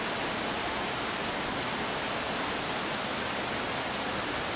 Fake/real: real